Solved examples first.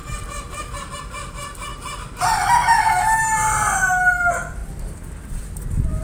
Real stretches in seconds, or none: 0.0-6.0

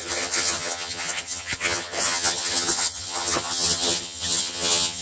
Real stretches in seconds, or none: none

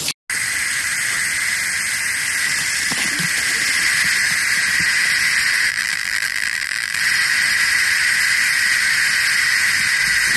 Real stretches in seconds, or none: 0.0-5.7; 7.0-10.4

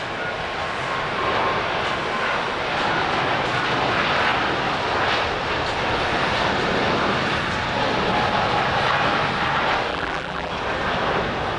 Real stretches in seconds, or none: 0.0-9.9; 10.5-11.6

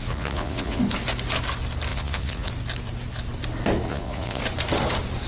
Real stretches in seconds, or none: 0.8-1.9; 2.5-3.9; 4.4-5.3

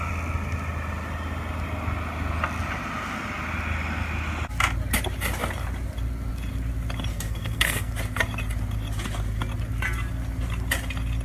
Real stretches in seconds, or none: 0.0-7.1; 7.9-11.2